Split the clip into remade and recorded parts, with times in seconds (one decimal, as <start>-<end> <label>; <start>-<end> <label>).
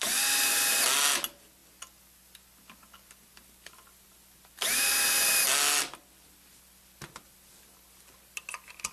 0.0-8.9 recorded